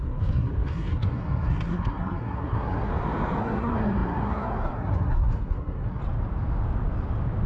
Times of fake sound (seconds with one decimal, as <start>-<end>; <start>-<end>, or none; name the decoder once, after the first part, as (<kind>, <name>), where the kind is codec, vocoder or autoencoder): 0.0-2.9 (codec, SNAC); 3.4-6.0